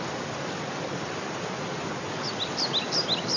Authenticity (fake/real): real